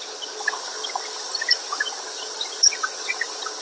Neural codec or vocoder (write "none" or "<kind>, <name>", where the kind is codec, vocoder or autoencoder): none